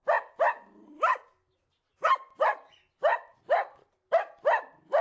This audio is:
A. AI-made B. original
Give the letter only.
B